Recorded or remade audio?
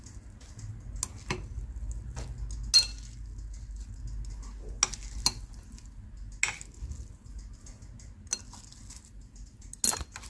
recorded